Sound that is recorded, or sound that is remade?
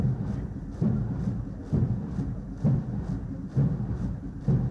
recorded